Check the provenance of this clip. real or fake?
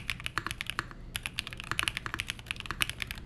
real